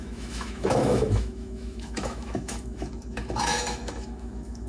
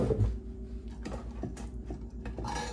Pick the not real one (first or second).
first